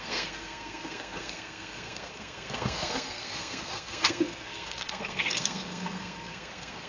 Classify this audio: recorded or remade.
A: remade